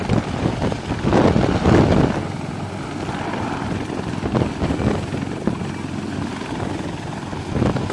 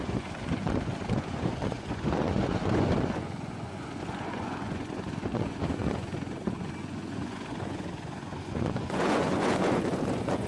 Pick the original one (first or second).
first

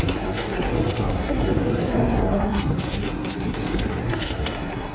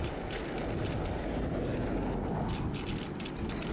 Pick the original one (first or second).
second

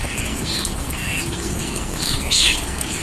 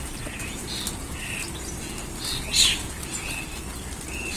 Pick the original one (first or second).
second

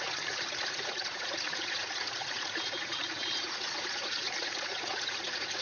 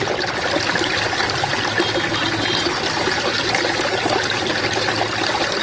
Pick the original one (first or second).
second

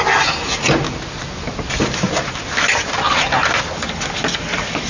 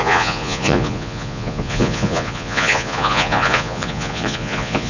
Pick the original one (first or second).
first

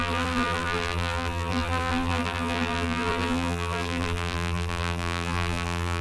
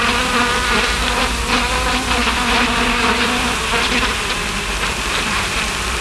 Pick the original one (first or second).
second